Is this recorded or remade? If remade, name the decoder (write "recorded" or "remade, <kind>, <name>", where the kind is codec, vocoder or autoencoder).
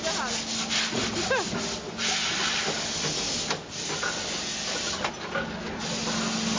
recorded